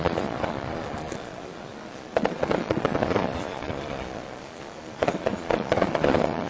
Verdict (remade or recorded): remade